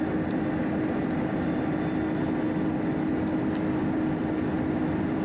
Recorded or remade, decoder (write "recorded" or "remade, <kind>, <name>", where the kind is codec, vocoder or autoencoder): recorded